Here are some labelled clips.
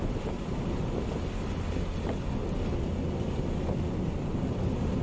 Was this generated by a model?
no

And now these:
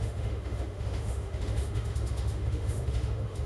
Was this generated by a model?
yes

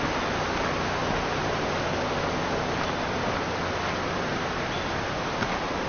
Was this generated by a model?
no